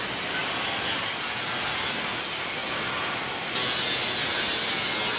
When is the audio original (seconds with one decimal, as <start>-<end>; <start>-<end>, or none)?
0.0-5.2